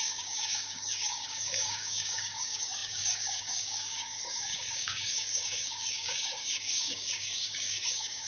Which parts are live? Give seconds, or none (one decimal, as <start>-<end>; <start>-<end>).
none